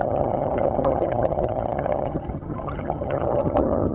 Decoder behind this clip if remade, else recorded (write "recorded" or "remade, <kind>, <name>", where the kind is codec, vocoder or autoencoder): remade, vocoder, HiFi-GAN